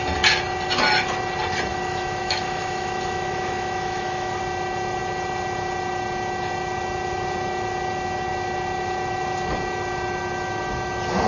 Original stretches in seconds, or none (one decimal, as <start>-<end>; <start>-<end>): 0.0-1.7; 4.4-11.3